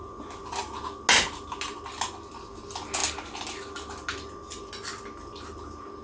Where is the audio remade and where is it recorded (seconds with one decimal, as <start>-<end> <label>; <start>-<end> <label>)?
0.0-6.0 recorded